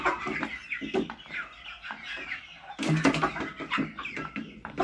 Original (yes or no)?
yes